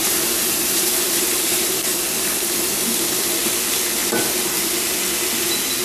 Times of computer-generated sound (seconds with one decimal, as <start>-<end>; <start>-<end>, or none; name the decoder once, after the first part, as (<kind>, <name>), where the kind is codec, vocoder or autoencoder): 0.0-3.4 (vocoder, BigVGAN v2); 4.0-4.7